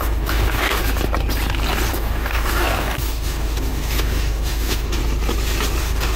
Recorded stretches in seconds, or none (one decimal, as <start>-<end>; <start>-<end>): 0.8-1.9; 5.0-5.8

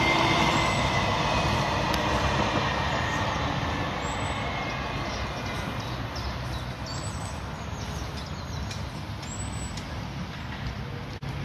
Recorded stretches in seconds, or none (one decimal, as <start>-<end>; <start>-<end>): 0.0-11.4

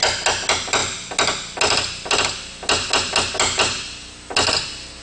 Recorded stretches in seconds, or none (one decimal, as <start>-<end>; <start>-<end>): 0.0-5.0

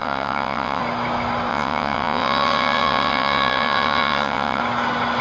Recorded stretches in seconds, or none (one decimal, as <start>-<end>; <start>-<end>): 0.8-1.5; 4.6-5.2

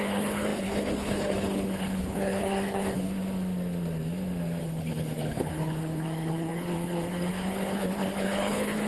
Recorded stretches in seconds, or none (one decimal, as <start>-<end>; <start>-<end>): 3.1-4.6

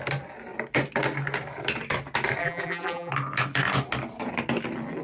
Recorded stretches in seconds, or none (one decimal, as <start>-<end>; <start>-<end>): 0.0-2.4; 3.1-5.0

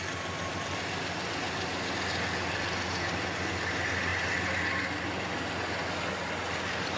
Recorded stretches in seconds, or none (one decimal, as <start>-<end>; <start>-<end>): 0.0-7.0

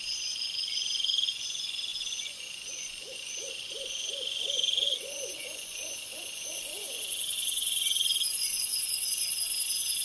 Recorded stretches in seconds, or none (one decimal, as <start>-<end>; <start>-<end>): none